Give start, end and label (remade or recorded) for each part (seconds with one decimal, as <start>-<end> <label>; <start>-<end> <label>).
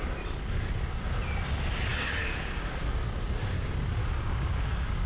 0.0-4.0 recorded; 4.0-5.1 remade